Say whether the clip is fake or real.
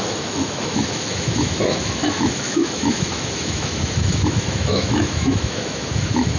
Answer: fake